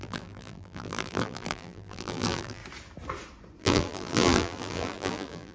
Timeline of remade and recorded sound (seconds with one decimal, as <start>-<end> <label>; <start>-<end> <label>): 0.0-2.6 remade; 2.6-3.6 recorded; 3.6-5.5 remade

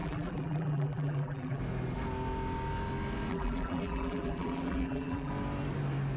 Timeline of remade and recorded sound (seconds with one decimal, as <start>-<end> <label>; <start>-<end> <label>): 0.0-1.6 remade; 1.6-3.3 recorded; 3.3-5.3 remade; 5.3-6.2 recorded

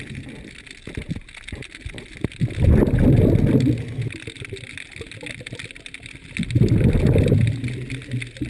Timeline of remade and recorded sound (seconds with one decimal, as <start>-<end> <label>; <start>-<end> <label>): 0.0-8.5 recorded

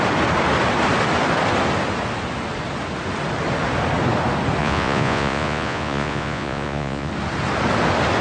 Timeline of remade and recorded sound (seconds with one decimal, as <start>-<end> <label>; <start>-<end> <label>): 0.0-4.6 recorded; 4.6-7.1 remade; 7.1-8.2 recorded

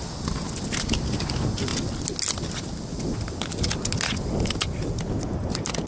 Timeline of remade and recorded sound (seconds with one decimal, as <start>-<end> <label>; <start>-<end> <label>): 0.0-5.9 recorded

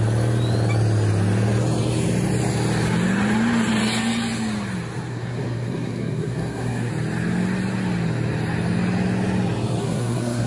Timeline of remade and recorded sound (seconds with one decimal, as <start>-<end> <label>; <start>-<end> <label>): 0.0-5.1 recorded; 5.1-6.9 remade; 6.9-9.8 recorded; 9.8-10.5 remade